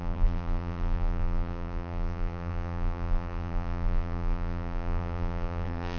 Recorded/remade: remade